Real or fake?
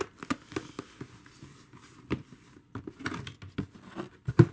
real